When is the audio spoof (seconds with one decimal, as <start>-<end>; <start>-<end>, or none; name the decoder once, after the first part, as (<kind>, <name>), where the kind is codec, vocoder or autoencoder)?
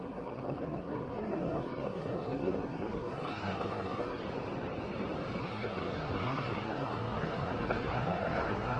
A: 0.0-4.2 (codec, SNAC); 5.4-8.8